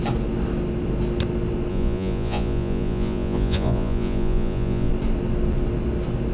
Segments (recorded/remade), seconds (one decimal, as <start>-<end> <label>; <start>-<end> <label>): 0.0-1.7 recorded; 1.7-4.9 remade; 4.9-6.3 recorded